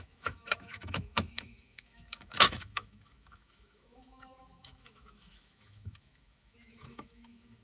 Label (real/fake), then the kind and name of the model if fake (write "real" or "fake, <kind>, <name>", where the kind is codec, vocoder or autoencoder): fake, autoencoder, DAC-VAE